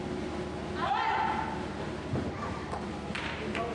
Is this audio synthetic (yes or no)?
no